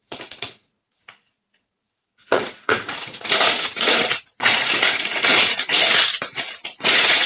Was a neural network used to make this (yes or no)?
yes